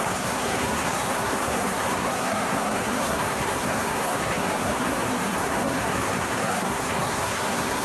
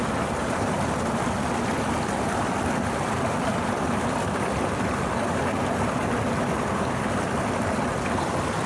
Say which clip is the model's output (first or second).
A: first